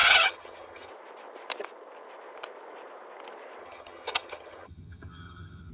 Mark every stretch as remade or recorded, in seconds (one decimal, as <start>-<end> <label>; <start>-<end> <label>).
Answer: 0.0-0.9 remade; 0.9-3.6 recorded; 3.6-5.7 remade